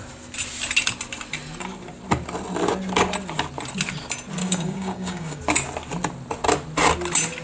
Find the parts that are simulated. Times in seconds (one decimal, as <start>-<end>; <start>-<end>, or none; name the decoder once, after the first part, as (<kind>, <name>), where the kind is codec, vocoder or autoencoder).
4.4-5.4 (codec, DAC)